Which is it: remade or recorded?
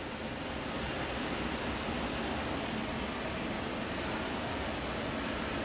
recorded